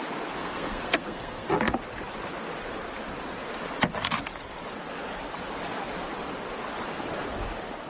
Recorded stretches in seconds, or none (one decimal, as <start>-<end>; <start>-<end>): 0.0-0.4; 1.5-7.9